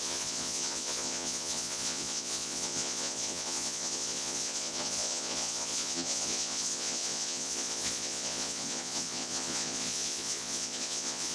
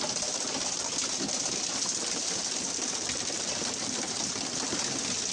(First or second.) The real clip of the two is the second